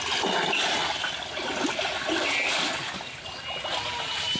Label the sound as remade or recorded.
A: recorded